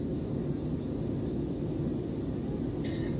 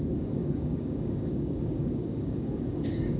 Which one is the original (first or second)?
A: first